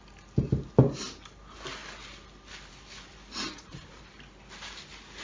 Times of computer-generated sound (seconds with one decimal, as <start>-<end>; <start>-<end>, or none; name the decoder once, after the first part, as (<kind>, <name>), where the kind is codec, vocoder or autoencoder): 3.5-4.0 (vocoder, Vocos)